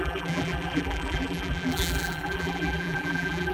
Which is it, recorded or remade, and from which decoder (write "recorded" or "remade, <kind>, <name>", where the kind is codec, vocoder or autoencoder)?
remade, vocoder, BigVGAN v2